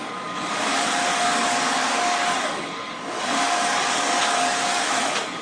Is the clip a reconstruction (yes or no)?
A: yes